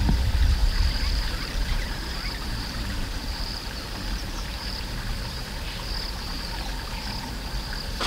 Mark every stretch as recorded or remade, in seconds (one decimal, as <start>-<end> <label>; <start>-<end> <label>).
0.0-0.6 recorded; 0.6-5.3 remade; 5.3-8.1 recorded